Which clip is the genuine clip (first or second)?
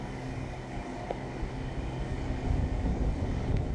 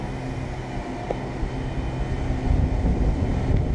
second